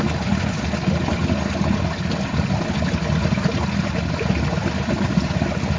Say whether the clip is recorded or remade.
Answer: recorded